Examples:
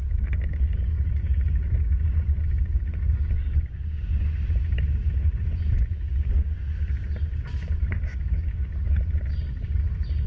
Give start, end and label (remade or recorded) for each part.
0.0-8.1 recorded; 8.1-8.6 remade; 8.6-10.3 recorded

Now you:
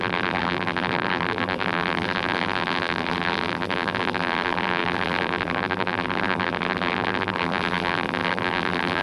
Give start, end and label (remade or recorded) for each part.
0.0-9.0 remade

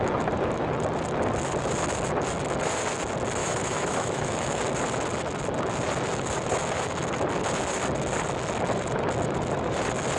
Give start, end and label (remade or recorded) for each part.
0.0-3.4 recorded; 3.4-4.6 remade; 4.6-10.2 recorded

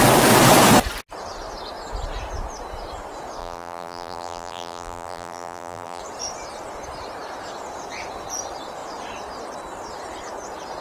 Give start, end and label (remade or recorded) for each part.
0.0-3.4 recorded; 3.4-6.0 remade; 6.0-10.8 recorded

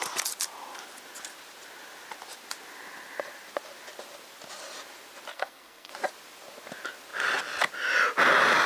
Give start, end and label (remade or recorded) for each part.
0.0-5.3 recorded; 5.3-5.9 remade; 5.9-8.7 recorded